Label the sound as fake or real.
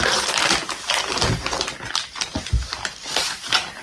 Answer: real